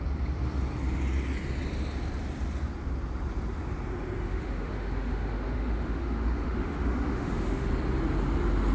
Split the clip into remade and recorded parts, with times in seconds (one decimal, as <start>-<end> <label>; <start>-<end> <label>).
0.0-4.2 recorded; 4.2-7.7 remade; 7.7-8.7 recorded